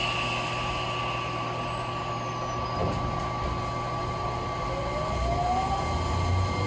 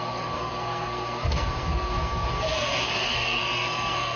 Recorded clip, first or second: first